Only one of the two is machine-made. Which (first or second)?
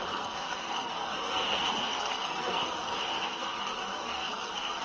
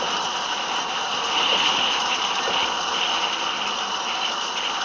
first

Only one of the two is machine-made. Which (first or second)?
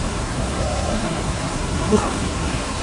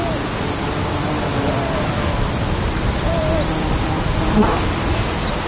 first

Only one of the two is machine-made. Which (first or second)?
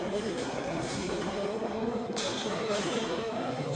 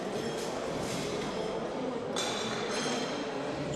first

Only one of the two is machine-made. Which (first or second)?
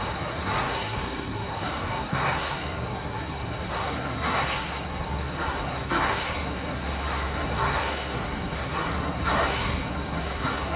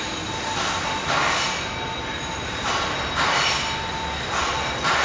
first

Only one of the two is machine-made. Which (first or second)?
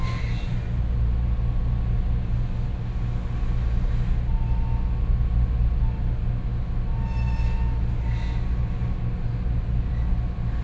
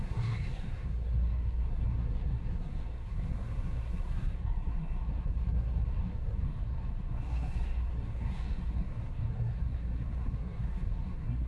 second